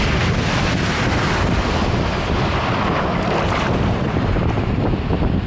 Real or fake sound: real